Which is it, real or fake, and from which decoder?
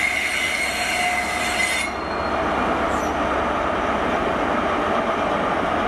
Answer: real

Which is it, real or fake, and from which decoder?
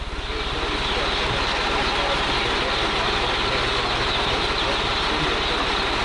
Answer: real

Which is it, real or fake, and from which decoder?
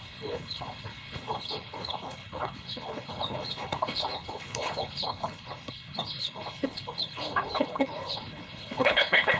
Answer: fake, codec, HILCodec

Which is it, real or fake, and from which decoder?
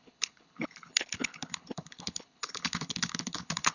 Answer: fake, codec, HILCodec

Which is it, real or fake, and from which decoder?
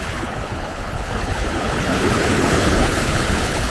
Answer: fake, codec, HILCodec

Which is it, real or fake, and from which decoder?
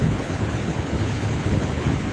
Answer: fake, codec, HILCodec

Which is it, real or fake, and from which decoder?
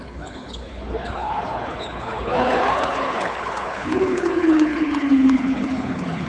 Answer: fake, codec, HILCodec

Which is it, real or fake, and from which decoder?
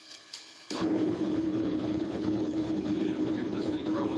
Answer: fake, codec, HILCodec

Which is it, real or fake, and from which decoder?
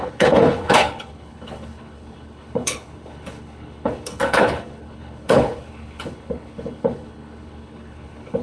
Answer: fake, codec, HILCodec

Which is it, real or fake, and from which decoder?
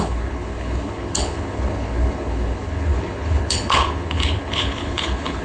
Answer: fake, codec, HILCodec